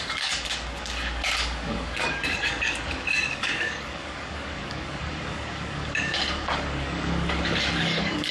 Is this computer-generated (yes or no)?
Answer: yes